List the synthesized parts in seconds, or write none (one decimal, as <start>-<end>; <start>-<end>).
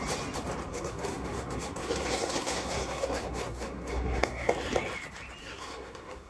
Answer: 0.7-4.5; 5.4-6.3